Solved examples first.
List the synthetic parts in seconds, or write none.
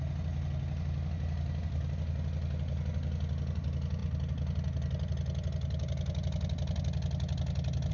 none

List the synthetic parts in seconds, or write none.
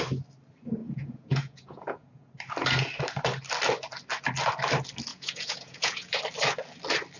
0.8-2.3 (vocoder, Vocos); 5.1-6.2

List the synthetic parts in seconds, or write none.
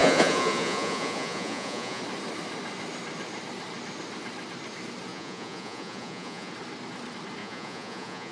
0.0-2.0 (vocoder, Vocos); 5.1-6.5; 7.4-8.3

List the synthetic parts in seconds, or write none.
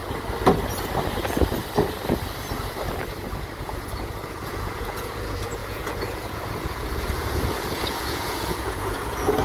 3.6-9.4 (vocoder, Vocos)